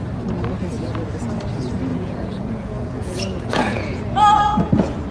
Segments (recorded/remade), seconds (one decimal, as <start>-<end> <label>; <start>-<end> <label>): 0.0-1.9 recorded; 1.9-4.0 remade; 4.0-5.1 recorded